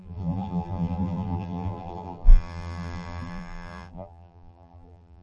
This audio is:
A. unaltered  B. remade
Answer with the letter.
B